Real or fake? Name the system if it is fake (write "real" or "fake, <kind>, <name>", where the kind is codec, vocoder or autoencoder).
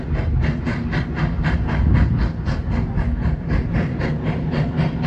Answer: real